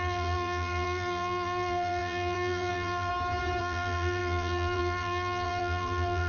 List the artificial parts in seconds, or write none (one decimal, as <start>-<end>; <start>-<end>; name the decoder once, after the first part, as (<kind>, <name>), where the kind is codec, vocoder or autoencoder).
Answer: 0.0-3.1 (vocoder, BigVGAN v2); 3.6-6.3